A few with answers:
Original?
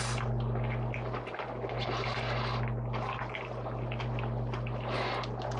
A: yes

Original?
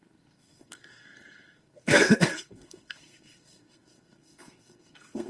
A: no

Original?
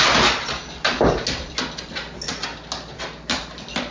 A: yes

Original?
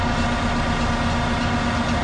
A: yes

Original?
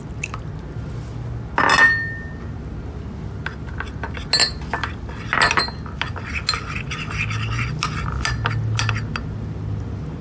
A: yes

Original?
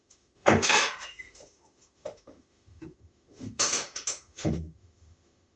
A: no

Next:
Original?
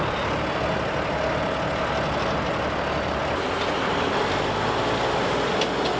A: yes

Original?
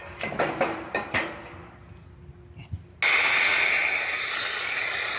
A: yes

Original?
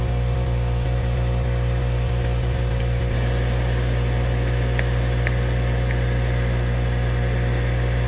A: yes